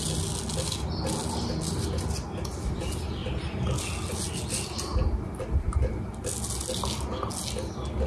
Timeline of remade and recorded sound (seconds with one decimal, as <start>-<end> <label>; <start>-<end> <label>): 0.0-8.1 recorded